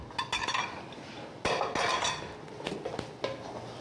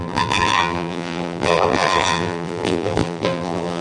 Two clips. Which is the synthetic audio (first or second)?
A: second